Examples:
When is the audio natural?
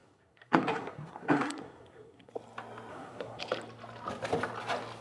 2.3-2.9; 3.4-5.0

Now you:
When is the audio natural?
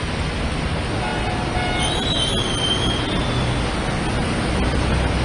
0.0-5.2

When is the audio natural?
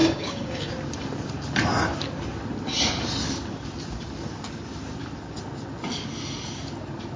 0.7-7.2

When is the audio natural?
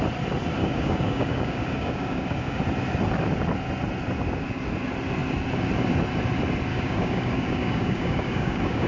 0.0-0.6; 2.6-6.7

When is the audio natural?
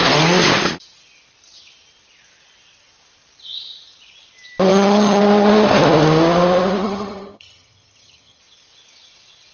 0.0-4.7; 5.2-6.8; 8.4-9.5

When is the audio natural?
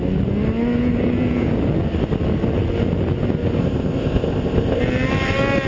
0.0-3.6; 4.8-5.7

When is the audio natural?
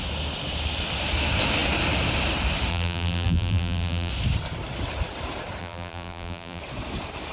0.0-2.7; 4.1-5.6; 6.6-7.3